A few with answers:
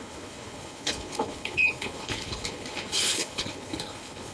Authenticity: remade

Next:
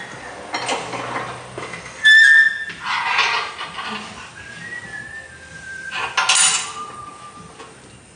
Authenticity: recorded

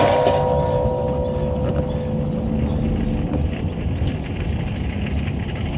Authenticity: recorded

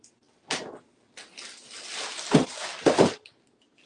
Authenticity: recorded